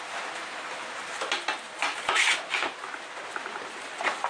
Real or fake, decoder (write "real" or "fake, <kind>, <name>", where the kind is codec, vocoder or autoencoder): real